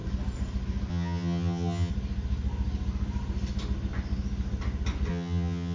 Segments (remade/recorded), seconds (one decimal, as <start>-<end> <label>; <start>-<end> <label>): 0.0-0.9 recorded; 0.9-1.9 remade; 1.9-5.1 recorded; 5.1-5.7 remade